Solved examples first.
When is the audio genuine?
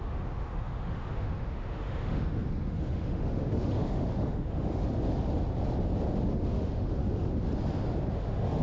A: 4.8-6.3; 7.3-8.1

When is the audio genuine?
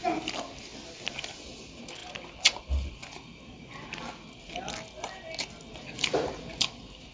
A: 0.0-7.1